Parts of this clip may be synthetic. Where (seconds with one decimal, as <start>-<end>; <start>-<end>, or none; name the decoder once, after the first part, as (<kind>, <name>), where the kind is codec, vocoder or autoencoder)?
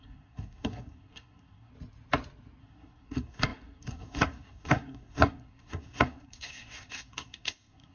0.0-1.7 (codec, SNAC); 2.6-7.9